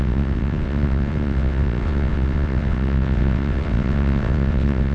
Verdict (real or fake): fake